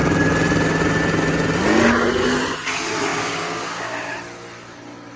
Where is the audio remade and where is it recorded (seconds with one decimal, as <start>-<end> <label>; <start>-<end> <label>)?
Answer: 0.0-3.1 recorded; 3.1-4.1 remade; 4.1-5.2 recorded